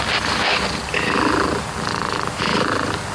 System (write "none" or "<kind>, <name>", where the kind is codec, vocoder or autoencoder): none